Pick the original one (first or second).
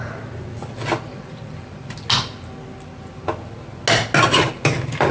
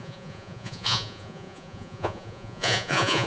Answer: first